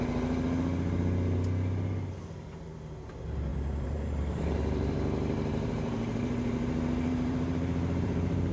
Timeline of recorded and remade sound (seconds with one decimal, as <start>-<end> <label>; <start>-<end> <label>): 0.0-3.5 recorded; 3.5-8.5 remade